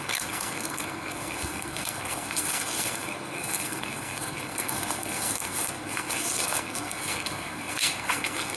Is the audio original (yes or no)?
no